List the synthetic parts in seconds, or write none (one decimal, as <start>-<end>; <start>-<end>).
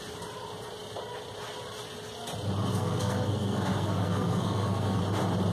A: 2.7-5.0